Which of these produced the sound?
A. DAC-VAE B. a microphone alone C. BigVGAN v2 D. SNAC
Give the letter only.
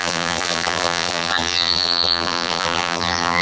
C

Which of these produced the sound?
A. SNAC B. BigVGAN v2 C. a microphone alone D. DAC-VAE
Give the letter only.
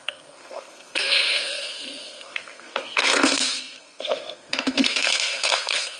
A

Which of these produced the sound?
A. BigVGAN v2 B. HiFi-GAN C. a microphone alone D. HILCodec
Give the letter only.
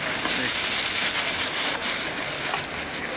C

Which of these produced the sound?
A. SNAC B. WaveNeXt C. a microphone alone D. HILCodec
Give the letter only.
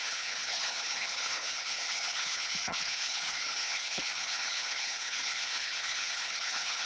D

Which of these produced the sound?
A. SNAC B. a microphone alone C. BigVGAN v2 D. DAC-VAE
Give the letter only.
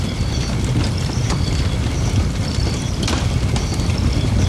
B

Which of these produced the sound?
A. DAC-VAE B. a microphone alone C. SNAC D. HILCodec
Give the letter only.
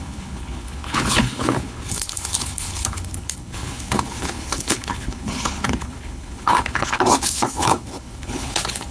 D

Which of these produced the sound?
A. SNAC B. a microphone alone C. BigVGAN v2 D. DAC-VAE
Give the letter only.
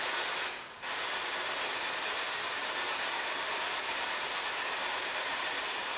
C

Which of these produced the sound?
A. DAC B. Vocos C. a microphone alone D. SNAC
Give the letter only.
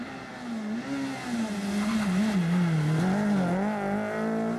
C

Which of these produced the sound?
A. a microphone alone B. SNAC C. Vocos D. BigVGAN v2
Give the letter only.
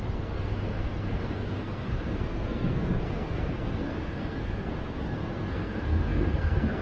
B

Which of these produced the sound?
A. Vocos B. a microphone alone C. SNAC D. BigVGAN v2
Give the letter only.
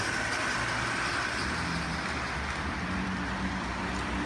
B